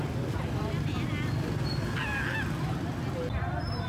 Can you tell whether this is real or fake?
real